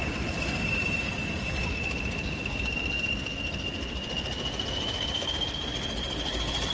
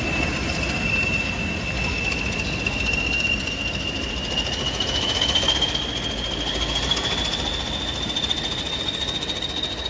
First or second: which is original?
second